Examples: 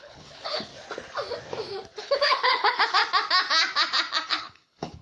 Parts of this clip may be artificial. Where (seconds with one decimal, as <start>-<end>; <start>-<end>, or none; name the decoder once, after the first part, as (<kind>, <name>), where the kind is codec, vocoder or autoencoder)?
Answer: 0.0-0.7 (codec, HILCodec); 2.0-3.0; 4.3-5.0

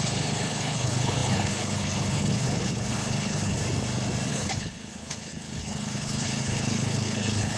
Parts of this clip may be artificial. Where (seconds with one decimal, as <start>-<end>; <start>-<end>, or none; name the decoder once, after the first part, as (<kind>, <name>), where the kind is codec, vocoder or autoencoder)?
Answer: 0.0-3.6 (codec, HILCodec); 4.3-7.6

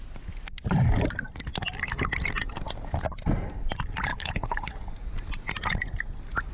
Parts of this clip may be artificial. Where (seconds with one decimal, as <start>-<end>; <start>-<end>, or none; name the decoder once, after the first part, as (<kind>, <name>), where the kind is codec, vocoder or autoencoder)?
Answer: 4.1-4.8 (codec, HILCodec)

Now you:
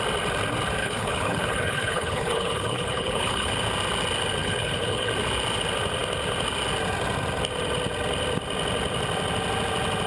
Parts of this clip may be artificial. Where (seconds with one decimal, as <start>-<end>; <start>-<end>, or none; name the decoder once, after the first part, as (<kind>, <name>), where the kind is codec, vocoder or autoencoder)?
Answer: 0.8-3.5 (codec, HILCodec); 4.4-5.1

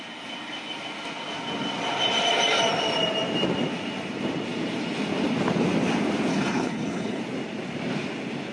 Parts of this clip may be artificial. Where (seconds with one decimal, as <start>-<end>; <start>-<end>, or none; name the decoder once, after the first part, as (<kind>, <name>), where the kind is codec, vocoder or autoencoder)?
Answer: 6.3-7.2 (codec, HILCodec)